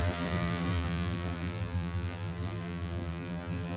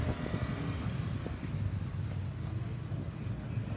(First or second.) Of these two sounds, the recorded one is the second